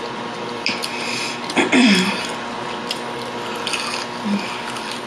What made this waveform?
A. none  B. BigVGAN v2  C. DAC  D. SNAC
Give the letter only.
A